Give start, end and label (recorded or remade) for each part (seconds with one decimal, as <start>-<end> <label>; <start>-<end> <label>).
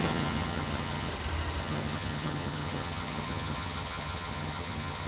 0.0-1.1 remade; 1.1-1.6 recorded; 1.6-5.1 remade